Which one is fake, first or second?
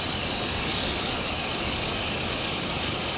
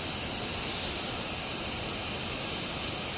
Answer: first